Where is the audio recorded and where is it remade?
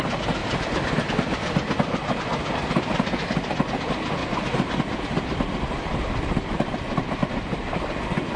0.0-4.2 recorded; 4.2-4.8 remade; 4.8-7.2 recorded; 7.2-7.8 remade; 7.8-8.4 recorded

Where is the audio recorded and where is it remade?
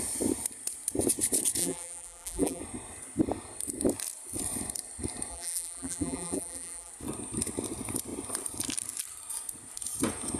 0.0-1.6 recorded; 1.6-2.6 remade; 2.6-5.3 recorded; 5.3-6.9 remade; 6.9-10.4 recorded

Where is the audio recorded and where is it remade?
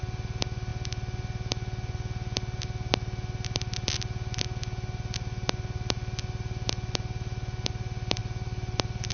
0.0-8.2 recorded; 8.2-9.1 remade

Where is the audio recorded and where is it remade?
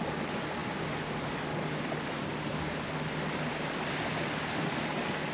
0.0-5.3 recorded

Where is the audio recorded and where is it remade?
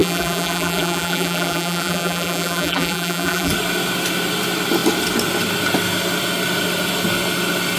0.0-3.5 remade; 3.5-7.8 recorded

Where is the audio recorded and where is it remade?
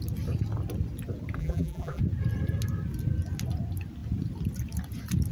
0.0-1.4 recorded; 1.4-2.0 remade; 2.0-5.3 recorded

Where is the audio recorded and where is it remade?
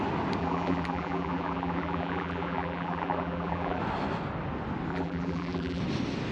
0.0-0.4 recorded; 0.4-3.8 remade; 3.8-4.9 recorded; 4.9-5.8 remade; 5.8-6.3 recorded